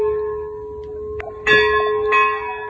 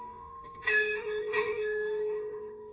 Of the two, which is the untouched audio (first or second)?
first